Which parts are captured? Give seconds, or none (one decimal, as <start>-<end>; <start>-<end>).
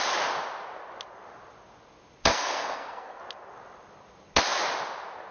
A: 0.0-2.3; 3.2-5.3